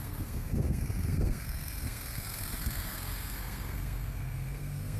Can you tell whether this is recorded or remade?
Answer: remade